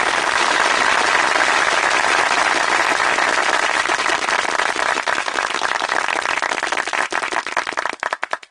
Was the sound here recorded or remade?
recorded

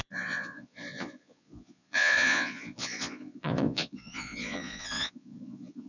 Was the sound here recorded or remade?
remade